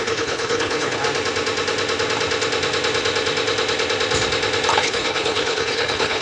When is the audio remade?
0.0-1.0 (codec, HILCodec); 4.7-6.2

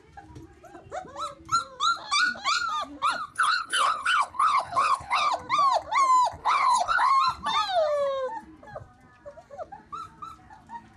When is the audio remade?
3.3-5.3 (codec, HILCodec); 6.4-7.1

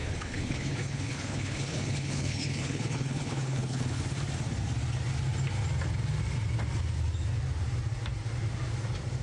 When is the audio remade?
0.0-4.0 (codec, HILCodec)

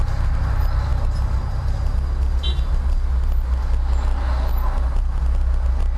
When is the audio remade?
none